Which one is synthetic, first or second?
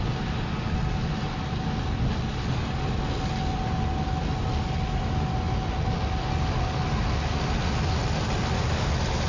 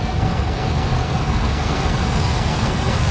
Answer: second